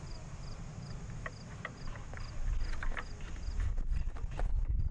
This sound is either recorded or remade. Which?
recorded